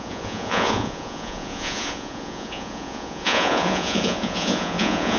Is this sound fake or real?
fake